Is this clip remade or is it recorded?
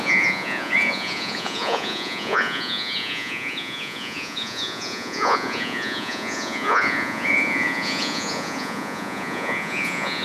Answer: remade